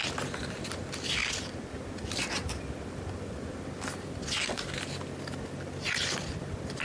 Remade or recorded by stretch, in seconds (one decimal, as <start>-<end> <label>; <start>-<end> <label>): 0.0-6.8 recorded